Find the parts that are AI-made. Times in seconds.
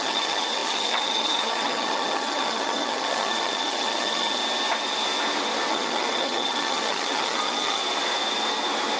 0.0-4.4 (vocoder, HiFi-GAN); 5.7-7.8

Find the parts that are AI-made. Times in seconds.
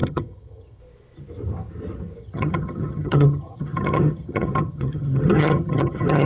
0.0-0.8 (vocoder, HiFi-GAN); 2.2-6.3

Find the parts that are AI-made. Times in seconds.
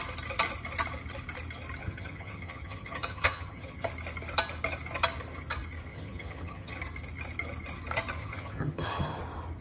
1.8-3.9 (vocoder, HiFi-GAN); 5.9-6.8; 8.2-9.2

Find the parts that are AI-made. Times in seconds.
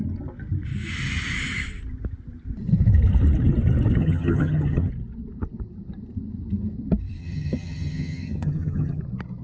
4.0-4.9 (vocoder, HiFi-GAN); 7.2-9.0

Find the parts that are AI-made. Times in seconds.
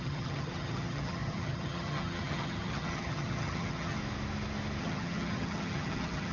0.0-4.0 (vocoder, HiFi-GAN); 4.8-6.3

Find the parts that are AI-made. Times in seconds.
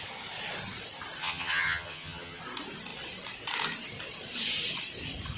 1.2-2.4 (vocoder, HiFi-GAN)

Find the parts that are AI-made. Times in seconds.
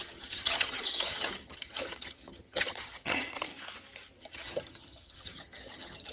0.0-3.5 (vocoder, HiFi-GAN); 4.2-6.1